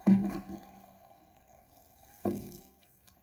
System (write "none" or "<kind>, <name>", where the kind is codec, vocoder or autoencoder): codec, SNAC